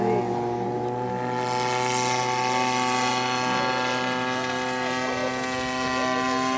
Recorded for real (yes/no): yes